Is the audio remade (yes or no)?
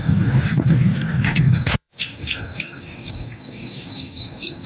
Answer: yes